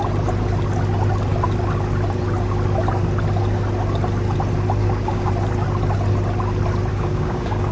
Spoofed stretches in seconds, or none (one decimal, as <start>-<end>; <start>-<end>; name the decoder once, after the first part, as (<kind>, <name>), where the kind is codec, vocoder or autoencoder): 4.8-5.3 (codec, DAC); 6.9-7.7